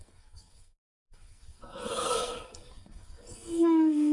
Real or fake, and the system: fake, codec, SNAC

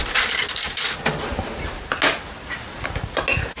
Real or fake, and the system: real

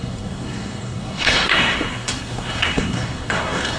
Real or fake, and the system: fake, codec, SNAC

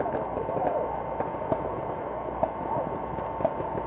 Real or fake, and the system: real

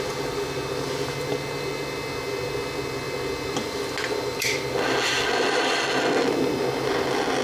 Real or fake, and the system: real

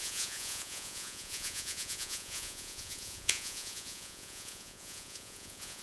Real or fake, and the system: fake, vocoder, Vocos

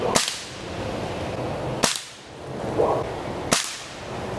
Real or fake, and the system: real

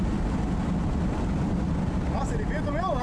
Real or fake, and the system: real